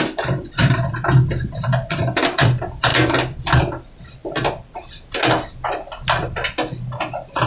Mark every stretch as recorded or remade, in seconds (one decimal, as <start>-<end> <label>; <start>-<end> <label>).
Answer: 0.0-2.9 remade; 2.9-3.6 recorded; 3.6-4.2 remade; 4.2-7.1 recorded; 7.1-7.5 remade